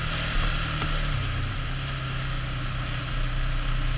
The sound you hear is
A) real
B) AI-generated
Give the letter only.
A